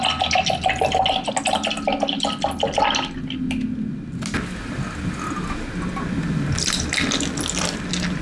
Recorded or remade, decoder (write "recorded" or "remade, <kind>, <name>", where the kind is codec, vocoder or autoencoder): recorded